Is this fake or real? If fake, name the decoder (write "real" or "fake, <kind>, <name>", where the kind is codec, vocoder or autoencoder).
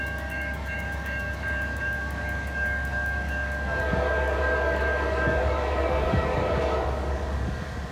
fake, codec, DAC